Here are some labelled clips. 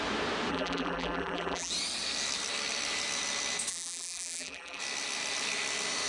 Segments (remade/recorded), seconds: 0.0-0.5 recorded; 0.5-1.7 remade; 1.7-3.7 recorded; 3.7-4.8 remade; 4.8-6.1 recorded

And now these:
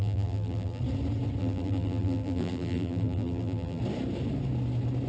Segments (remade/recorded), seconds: 0.0-0.8 remade; 0.8-1.4 recorded; 1.4-3.8 remade; 3.8-5.1 recorded

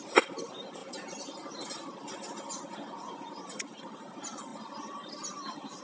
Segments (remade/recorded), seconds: 0.0-0.8 remade; 0.8-3.8 recorded; 3.8-5.8 remade

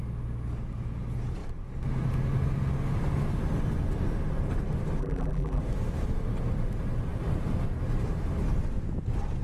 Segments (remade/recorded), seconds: 0.0-5.0 recorded; 5.0-5.6 remade; 5.6-9.4 recorded

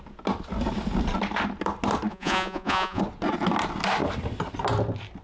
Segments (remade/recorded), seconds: 0.0-2.1 recorded; 2.1-3.0 remade; 3.0-5.2 recorded